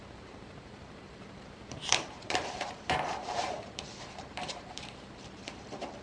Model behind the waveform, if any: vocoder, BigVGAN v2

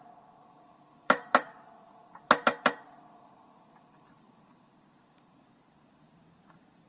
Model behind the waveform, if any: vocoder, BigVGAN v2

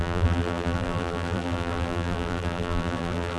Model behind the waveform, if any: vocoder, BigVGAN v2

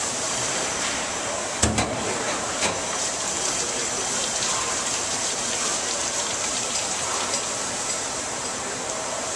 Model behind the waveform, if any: vocoder, BigVGAN v2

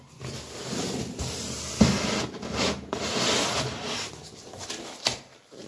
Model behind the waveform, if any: none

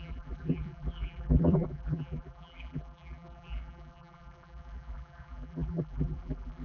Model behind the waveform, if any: vocoder, BigVGAN v2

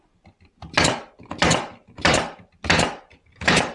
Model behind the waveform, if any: none